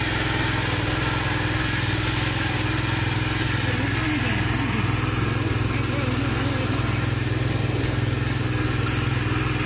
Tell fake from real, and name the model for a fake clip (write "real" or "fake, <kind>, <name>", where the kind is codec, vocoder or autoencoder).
real